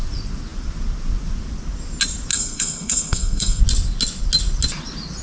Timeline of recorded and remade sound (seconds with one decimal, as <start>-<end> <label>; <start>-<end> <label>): 0.0-2.3 recorded; 2.3-3.6 remade; 3.6-5.2 recorded